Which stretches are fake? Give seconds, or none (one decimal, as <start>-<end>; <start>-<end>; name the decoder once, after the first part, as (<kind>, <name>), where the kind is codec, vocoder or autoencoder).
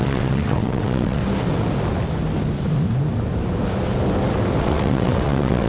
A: 0.0-1.2 (vocoder, WaveNeXt); 4.6-5.7